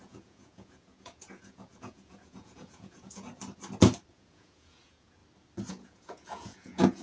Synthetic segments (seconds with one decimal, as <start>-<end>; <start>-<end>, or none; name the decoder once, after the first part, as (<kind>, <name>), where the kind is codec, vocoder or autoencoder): 0.0-3.3 (vocoder, Vocos); 4.1-5.2; 5.7-7.0